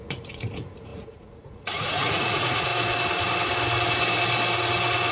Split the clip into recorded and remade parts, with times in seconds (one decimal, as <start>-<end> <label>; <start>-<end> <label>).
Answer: 0.0-2.7 remade; 2.7-5.1 recorded

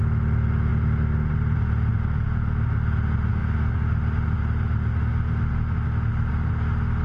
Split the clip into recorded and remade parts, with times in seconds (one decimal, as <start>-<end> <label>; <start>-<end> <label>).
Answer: 0.0-7.0 recorded

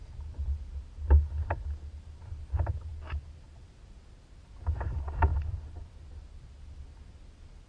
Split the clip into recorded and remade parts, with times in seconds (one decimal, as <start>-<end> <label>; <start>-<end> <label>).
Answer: 0.0-7.7 recorded

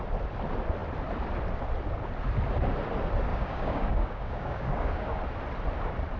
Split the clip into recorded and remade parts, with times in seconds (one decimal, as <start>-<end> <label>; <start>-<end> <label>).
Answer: 0.0-3.3 recorded; 3.3-5.2 remade; 5.2-6.2 recorded

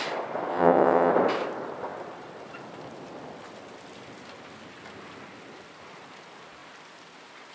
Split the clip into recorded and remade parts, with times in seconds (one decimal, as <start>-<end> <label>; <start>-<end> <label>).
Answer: 0.0-0.5 recorded; 0.5-1.1 remade; 1.1-7.5 recorded

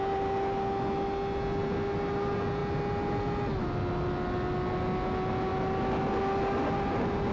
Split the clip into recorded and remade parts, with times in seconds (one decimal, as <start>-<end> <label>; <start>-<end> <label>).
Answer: 0.0-7.3 recorded

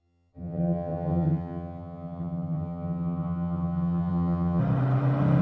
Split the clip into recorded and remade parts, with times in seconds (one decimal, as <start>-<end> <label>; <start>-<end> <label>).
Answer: 0.0-4.6 remade; 4.6-5.4 recorded

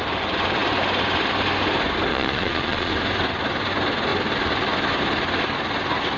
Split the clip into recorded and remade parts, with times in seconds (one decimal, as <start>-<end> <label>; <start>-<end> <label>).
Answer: 0.0-2.1 recorded; 2.1-2.9 remade; 2.9-6.2 recorded